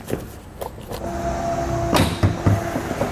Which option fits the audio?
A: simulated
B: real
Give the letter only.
B